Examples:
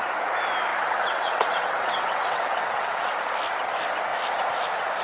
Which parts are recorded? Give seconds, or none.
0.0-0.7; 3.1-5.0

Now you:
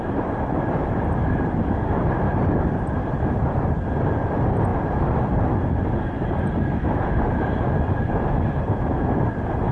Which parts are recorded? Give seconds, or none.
none

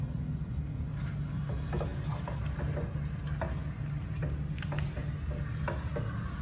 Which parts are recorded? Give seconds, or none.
0.0-6.4

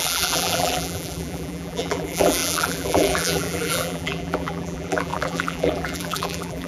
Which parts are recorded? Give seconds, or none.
none

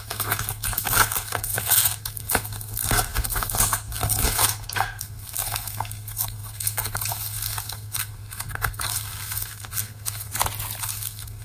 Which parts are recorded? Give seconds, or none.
10.3-10.8

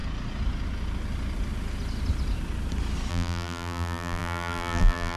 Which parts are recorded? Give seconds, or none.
0.0-3.1